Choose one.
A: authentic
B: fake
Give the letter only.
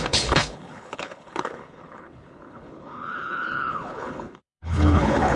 B